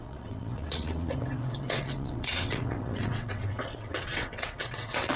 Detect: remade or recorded remade